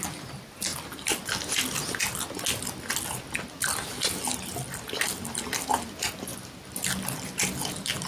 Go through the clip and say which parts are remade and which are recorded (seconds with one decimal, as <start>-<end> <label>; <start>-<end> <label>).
0.0-8.1 recorded